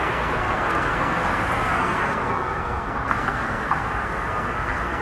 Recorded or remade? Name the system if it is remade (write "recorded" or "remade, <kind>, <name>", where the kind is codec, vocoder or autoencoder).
remade, codec, SNAC